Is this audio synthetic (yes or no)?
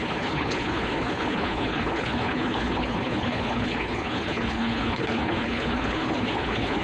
yes